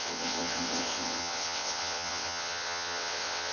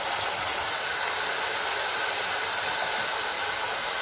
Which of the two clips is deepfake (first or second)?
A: first